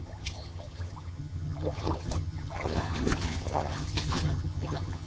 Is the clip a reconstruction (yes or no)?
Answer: yes